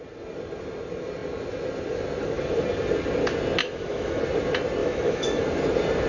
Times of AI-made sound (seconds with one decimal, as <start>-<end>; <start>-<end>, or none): 3.6-4.2; 4.8-5.4